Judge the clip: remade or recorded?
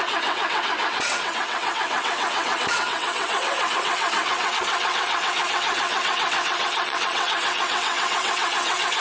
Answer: remade